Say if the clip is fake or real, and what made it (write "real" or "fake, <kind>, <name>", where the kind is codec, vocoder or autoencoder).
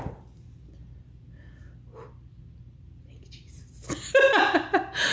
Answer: real